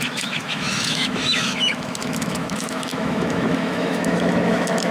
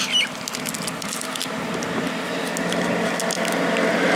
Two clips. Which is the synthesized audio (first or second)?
first